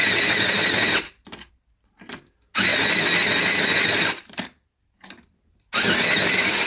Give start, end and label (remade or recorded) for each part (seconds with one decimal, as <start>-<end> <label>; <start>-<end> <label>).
0.0-6.7 recorded